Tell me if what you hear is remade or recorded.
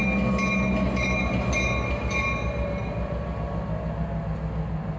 recorded